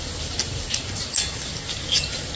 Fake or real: real